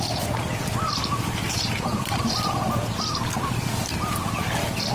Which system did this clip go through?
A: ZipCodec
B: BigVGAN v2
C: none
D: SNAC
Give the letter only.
C